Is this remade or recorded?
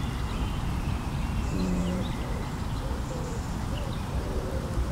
recorded